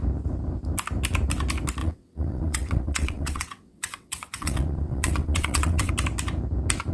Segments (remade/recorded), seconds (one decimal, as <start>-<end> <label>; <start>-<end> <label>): 0.0-1.8 recorded; 1.8-5.9 remade; 5.9-6.9 recorded